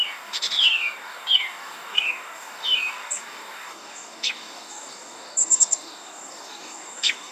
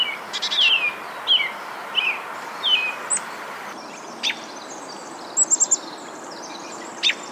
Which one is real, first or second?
second